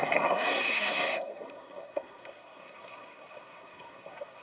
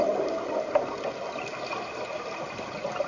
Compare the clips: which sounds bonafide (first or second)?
second